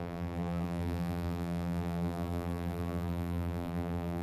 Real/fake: fake